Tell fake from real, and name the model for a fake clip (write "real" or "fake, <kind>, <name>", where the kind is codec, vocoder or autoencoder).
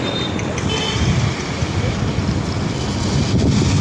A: real